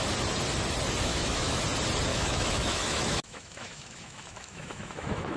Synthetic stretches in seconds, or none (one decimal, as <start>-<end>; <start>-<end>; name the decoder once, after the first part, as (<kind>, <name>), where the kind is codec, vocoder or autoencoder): 1.1-1.6 (autoencoder, DAC-VAE); 2.1-5.4